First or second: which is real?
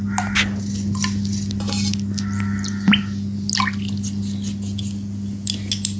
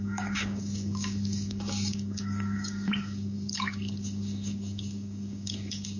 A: first